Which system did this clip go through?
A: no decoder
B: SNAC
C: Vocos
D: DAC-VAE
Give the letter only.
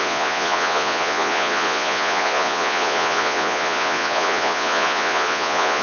C